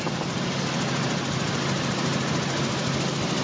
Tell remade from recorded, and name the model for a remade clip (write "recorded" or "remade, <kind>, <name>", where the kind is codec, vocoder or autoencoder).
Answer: recorded